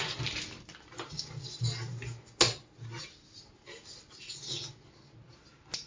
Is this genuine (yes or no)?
yes